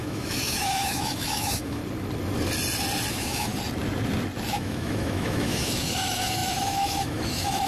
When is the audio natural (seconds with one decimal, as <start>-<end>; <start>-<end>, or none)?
1.8-3.1; 3.5-4.5